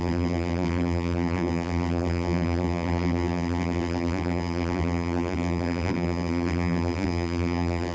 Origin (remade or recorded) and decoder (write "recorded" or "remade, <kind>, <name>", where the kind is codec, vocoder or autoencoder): remade, vocoder, BigVGAN v2